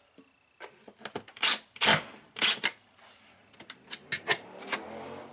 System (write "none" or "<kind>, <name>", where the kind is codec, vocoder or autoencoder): none